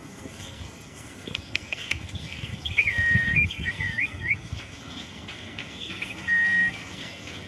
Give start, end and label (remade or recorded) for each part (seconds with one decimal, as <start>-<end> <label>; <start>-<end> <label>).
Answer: 0.0-7.5 remade